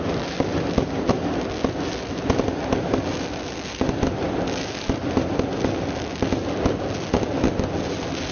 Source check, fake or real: real